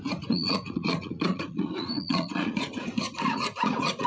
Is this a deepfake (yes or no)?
yes